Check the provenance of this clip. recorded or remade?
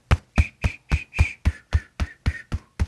recorded